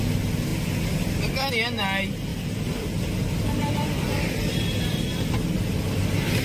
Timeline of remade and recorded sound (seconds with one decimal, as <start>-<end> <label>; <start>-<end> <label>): 0.0-2.3 recorded; 2.3-6.4 remade